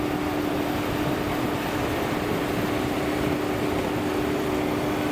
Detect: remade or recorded recorded